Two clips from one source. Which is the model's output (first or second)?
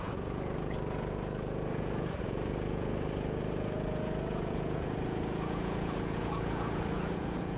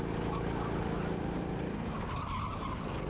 first